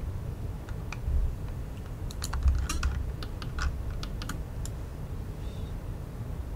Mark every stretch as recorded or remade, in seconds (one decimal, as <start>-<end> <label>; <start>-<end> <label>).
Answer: 0.0-1.2 recorded; 1.2-2.7 remade; 2.7-6.6 recorded